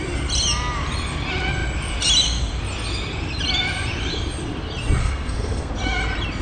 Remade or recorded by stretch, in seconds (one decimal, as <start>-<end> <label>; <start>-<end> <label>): 0.0-5.0 recorded; 5.0-5.7 remade; 5.7-6.4 recorded